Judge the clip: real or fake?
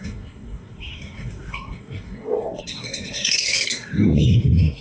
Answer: fake